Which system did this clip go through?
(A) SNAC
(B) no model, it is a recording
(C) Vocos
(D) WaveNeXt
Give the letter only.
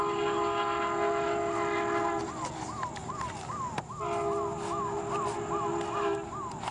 B